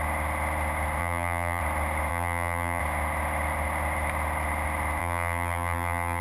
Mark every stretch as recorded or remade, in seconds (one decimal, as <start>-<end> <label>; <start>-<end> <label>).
0.0-1.0 recorded; 1.0-1.6 remade; 1.6-2.1 recorded; 2.1-2.8 remade; 2.8-5.0 recorded; 5.0-6.2 remade